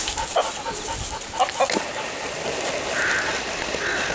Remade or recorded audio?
recorded